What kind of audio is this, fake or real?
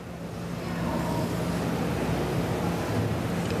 real